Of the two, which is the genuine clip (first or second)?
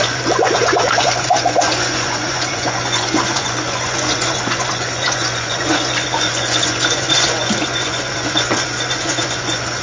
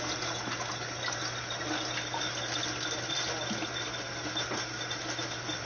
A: second